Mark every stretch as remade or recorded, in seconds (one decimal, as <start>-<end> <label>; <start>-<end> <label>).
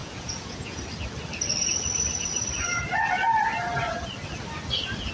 0.0-0.8 remade; 0.8-5.1 recorded